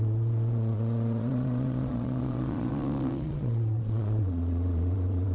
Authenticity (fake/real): fake